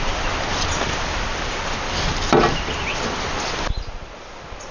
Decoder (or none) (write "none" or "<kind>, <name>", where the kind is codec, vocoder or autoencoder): none